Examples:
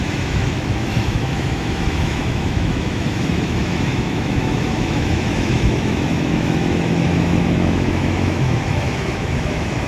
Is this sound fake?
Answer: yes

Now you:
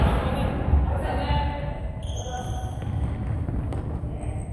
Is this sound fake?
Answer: no